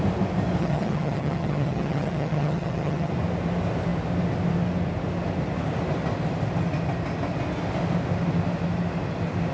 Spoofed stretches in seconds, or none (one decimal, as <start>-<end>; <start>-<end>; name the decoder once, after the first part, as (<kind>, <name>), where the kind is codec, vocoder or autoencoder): 0.6-3.1 (vocoder, HiFi-GAN)